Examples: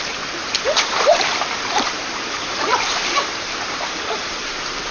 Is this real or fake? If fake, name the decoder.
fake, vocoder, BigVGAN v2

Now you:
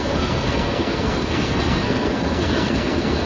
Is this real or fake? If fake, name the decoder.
fake, codec, SNAC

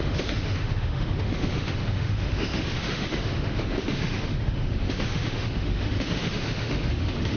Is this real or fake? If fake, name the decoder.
fake, autoencoder, DAC-VAE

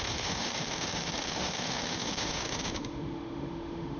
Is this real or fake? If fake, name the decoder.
fake, autoencoder, DAC-VAE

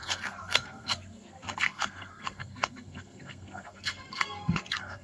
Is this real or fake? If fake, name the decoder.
fake, codec, SNAC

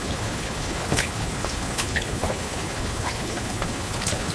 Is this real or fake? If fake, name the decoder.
fake, codec, HILCodec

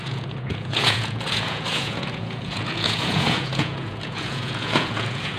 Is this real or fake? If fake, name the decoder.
fake, vocoder, Vocos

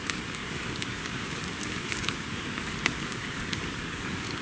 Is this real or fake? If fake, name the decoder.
fake, codec, DAC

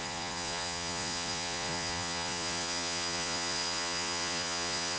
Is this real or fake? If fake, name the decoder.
fake, vocoder, Vocos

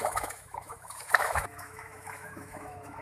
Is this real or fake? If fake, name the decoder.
fake, autoencoder, DAC-VAE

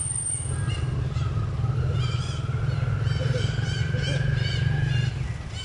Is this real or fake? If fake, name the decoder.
real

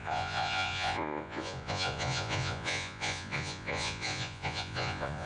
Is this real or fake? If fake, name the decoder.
fake, vocoder, Vocos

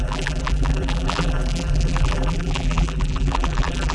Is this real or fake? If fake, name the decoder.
fake, vocoder, BigVGAN v2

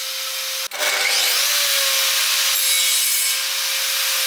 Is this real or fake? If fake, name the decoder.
real